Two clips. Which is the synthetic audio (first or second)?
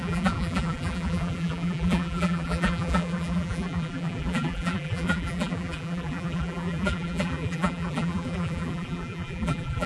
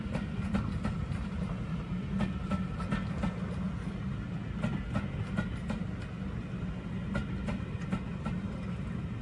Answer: first